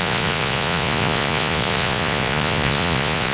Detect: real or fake fake